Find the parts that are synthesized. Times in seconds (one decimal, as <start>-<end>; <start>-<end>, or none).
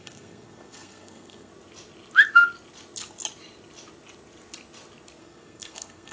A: 0.0-1.5; 5.2-6.1